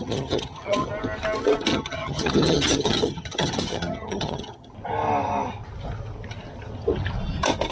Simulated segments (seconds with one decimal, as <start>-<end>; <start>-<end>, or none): 0.0-0.9; 1.7-4.7